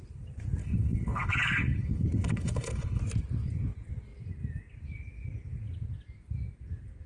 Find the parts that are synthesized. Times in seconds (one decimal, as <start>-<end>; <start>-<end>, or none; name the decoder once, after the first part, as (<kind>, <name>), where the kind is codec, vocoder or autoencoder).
0.6-3.0 (codec, HILCodec)